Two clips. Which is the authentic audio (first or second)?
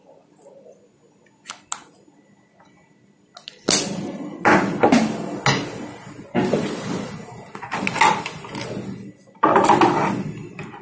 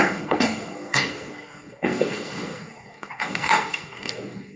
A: first